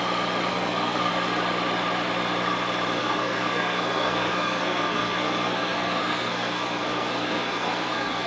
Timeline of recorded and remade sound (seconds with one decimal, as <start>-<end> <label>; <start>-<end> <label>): 0.0-0.5 recorded; 0.5-1.1 remade; 1.1-3.0 recorded; 3.0-8.3 remade